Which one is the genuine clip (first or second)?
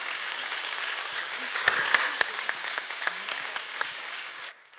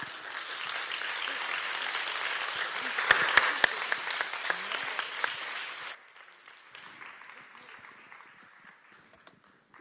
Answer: second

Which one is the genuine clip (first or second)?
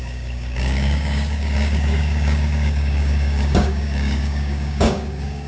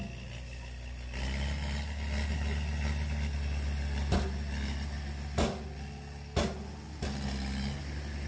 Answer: second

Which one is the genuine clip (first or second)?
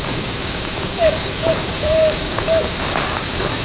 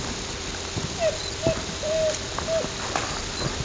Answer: second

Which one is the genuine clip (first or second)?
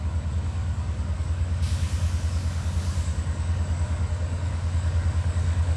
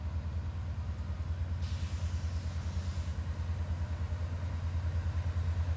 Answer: second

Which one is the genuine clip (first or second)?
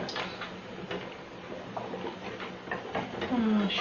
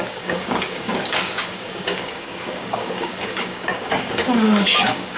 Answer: first